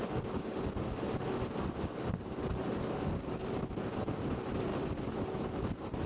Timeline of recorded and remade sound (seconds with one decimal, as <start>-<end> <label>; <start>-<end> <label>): 0.0-6.1 recorded